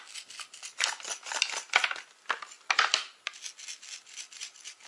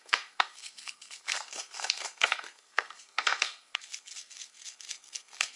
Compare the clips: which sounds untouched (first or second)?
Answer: first